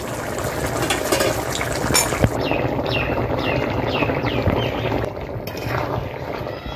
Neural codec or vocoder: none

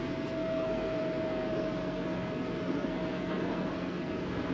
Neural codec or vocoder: codec, SNAC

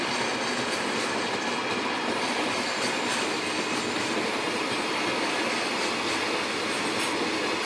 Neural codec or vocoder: none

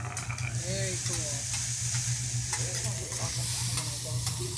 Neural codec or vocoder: none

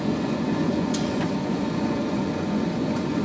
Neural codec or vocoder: vocoder, Vocos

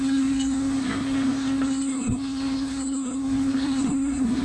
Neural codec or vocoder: codec, SNAC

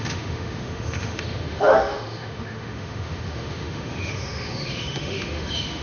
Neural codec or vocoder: autoencoder, DAC-VAE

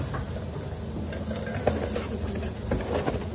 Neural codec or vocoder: none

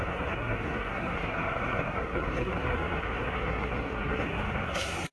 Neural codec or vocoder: codec, SNAC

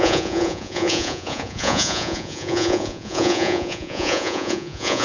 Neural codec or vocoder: vocoder, Vocos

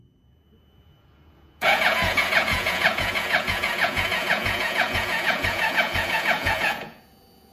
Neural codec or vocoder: vocoder, Vocos